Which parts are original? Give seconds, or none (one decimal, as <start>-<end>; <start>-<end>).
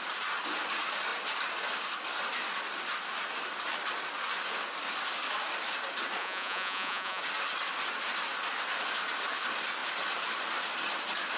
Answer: 0.0-6.2; 7.2-11.4